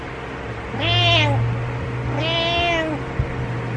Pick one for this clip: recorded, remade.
recorded